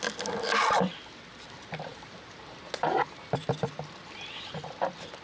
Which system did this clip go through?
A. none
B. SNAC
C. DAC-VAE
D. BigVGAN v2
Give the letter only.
A